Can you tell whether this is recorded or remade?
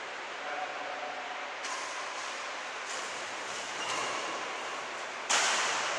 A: recorded